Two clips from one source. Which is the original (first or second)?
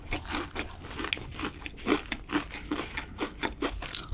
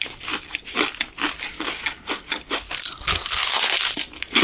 first